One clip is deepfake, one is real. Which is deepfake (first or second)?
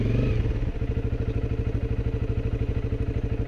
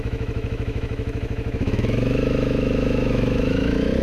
second